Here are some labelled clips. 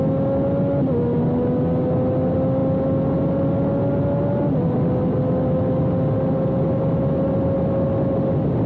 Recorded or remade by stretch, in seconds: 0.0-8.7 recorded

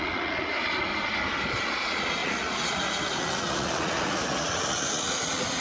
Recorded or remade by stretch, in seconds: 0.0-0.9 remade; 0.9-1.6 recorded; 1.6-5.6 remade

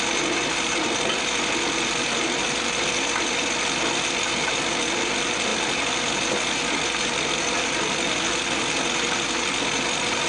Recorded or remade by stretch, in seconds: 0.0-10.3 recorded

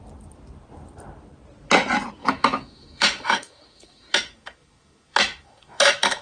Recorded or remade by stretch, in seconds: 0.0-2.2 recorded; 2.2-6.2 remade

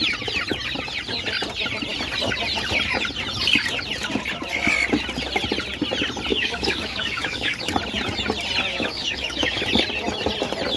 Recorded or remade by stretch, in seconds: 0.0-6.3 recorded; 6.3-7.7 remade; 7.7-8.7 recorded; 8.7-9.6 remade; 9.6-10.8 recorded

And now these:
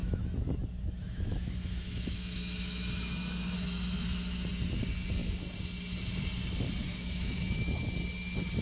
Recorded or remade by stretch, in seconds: 0.0-4.5 remade; 4.5-6.9 recorded; 6.9-7.7 remade; 7.7-8.6 recorded